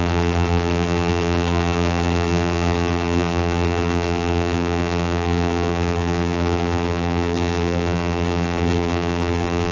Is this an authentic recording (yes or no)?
no